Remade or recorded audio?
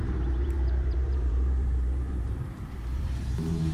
remade